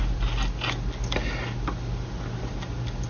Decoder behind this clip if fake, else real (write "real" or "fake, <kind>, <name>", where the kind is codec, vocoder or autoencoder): real